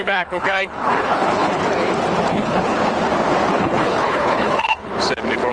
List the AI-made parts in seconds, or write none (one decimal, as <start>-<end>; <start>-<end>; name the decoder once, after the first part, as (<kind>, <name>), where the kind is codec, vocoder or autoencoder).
0.0-1.6 (codec, HILCodec); 2.3-2.8; 3.5-4.9